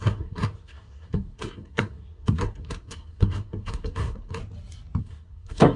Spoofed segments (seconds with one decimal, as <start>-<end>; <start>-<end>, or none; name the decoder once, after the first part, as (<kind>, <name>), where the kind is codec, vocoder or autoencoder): 0.0-4.4 (codec, SNAC); 5.0-5.8